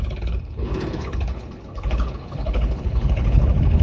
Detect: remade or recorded remade